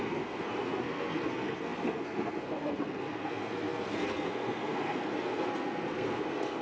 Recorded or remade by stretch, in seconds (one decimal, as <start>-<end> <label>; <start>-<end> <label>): 0.0-6.6 remade